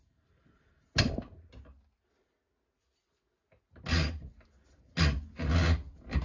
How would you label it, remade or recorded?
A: recorded